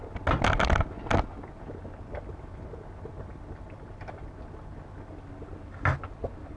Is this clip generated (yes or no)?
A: no